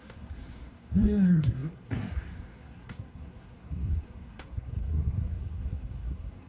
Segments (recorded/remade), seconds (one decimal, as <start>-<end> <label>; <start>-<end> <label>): 0.0-6.5 remade